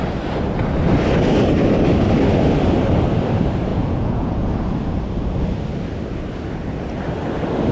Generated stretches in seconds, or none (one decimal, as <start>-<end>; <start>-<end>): 3.7-4.5